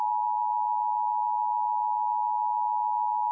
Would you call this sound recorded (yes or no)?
yes